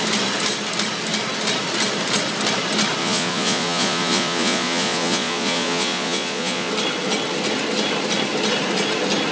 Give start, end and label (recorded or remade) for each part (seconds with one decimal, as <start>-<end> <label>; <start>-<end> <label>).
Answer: 0.0-3.0 recorded; 3.0-6.7 remade; 6.7-9.3 recorded